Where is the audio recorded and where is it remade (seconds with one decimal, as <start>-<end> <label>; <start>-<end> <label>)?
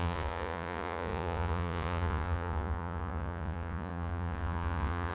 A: 0.0-5.1 remade